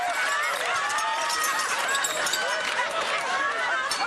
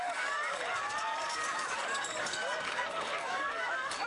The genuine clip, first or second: first